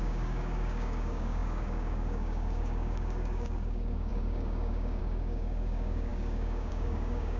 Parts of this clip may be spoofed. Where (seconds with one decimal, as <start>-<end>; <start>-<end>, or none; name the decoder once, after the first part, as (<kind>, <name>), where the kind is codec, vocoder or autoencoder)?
0.0-7.4 (codec, DAC)